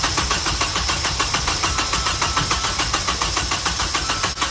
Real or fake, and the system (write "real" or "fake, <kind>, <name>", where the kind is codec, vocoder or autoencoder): real